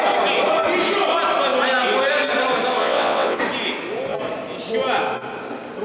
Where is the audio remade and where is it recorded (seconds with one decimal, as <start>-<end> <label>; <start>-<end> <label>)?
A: 0.0-2.8 recorded; 2.8-3.4 remade; 3.4-5.8 recorded